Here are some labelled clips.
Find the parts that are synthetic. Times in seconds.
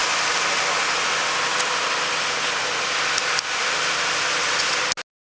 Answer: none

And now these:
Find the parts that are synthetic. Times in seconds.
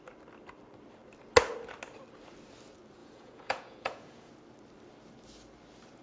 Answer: 3.0-4.3